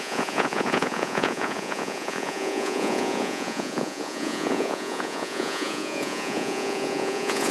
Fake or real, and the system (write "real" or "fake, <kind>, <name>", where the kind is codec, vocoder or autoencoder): fake, vocoder, Vocos